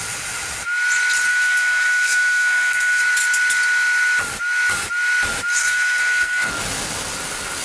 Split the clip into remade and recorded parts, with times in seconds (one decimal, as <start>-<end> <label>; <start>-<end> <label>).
0.0-1.3 recorded; 1.3-3.0 remade; 3.0-5.6 recorded; 5.6-6.5 remade; 6.5-7.6 recorded